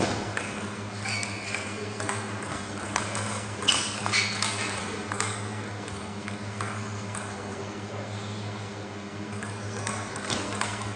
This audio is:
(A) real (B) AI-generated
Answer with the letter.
B